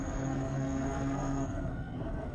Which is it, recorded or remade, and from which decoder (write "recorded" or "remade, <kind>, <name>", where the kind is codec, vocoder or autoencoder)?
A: remade, codec, SNAC